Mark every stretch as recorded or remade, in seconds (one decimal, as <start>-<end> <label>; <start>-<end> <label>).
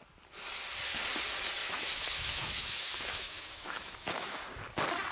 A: 0.0-1.6 recorded; 1.6-4.4 remade; 4.4-5.1 recorded